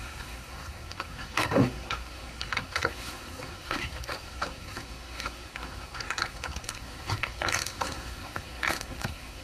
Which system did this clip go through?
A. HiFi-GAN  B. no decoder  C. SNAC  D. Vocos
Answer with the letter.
C